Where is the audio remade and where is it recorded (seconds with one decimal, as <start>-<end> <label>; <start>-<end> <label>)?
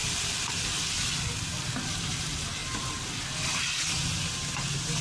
0.0-5.0 recorded